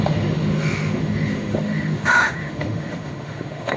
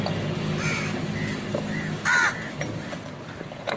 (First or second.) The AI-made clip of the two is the first